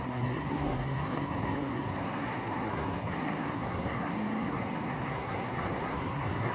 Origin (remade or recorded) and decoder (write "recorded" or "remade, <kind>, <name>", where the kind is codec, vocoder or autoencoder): remade, codec, SNAC